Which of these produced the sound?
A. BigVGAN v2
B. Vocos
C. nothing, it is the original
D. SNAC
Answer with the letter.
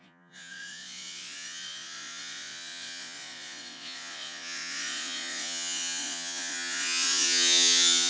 B